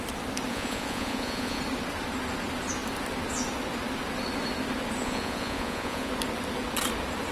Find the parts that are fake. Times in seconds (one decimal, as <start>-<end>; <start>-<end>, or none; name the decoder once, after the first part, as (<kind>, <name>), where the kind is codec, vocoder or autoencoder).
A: 0.5-1.6 (vocoder, Vocos); 5.0-6.1